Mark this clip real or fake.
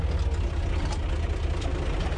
real